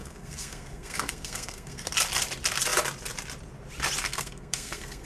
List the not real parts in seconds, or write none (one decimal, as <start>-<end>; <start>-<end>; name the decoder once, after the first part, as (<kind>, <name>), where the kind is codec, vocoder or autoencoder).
0.0-1.9 (codec, SNAC); 4.0-5.1